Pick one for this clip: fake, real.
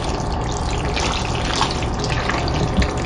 real